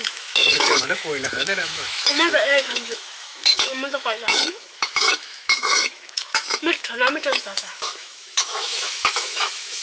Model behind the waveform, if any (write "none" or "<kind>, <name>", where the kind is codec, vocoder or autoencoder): autoencoder, DAC-VAE